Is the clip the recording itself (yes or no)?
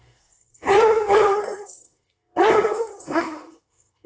no